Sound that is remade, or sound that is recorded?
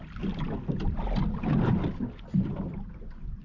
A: recorded